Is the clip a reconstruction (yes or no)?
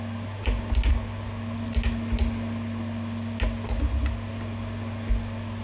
no